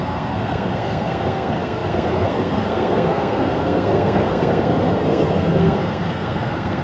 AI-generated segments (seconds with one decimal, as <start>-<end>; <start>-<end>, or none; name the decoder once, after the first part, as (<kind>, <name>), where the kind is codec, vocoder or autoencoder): 0.0-6.8 (codec, SNAC)